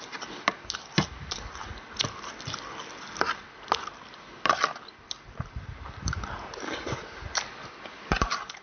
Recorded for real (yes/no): yes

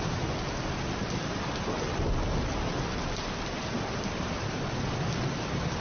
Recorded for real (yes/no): yes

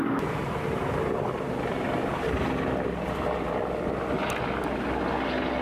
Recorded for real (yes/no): yes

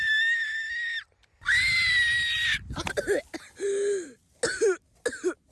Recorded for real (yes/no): yes